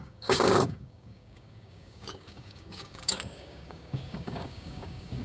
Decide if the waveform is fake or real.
fake